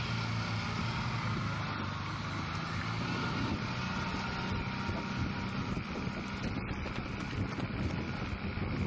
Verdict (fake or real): real